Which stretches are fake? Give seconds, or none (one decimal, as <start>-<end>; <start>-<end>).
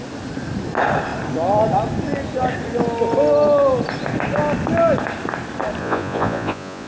5.8-6.9